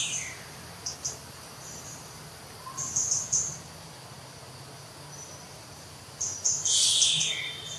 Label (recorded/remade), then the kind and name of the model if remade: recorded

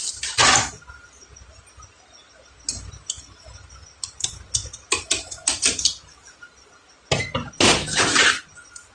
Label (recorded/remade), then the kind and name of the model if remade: recorded